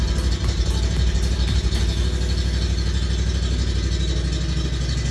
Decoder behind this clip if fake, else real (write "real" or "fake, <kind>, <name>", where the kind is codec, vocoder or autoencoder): real